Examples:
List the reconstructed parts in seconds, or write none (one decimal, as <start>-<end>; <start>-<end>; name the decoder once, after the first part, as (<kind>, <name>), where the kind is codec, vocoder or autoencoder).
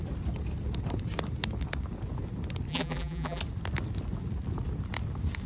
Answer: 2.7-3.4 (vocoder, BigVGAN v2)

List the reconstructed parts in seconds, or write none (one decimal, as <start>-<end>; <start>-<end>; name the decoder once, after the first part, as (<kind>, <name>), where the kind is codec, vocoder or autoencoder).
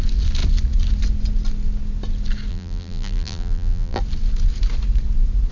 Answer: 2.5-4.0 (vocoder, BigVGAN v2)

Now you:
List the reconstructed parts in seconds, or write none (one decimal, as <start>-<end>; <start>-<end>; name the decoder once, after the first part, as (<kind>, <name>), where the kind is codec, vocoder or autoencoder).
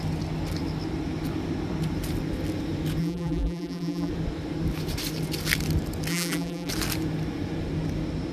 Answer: 3.0-4.1 (vocoder, BigVGAN v2); 6.1-6.7